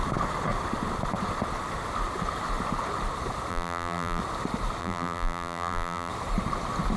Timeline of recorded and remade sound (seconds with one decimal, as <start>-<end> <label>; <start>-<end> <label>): 0.0-3.5 recorded; 3.5-4.2 remade; 4.2-4.8 recorded; 4.8-6.1 remade; 6.1-7.0 recorded